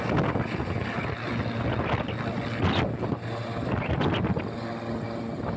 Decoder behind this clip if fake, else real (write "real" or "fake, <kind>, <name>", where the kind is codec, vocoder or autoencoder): real